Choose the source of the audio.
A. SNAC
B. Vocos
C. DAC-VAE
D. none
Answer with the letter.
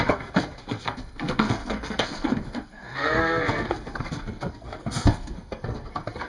A